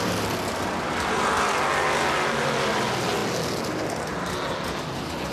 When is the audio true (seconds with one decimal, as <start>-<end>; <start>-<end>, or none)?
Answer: 0.0-5.3